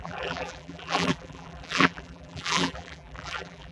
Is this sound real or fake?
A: fake